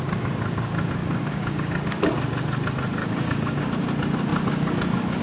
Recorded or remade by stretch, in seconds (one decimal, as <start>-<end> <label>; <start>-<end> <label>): 0.0-1.0 recorded; 1.0-1.7 remade; 1.7-3.0 recorded; 3.0-3.7 remade; 3.7-5.2 recorded